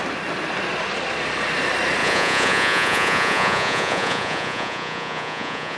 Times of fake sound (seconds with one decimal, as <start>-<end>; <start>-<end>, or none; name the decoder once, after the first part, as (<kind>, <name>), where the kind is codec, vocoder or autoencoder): 2.0-5.8 (vocoder, Vocos)